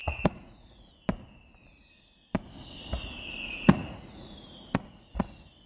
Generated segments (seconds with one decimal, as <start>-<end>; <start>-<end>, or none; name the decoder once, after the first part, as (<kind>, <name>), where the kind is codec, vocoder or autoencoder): 0.0-0.9 (vocoder, Vocos); 2.9-5.3